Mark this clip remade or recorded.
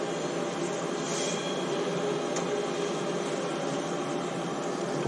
recorded